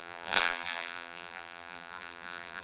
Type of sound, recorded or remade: remade